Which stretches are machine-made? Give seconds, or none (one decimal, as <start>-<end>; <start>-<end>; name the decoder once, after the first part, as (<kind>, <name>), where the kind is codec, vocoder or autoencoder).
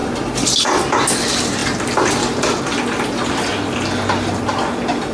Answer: none